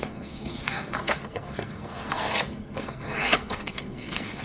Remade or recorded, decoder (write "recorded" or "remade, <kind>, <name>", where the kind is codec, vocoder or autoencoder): remade, codec, SNAC